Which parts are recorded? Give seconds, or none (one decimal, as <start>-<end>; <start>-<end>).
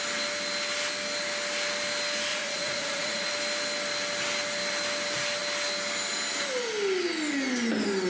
0.0-2.3; 3.3-8.1